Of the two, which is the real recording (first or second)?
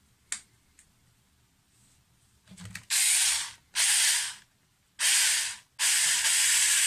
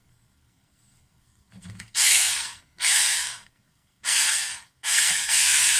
first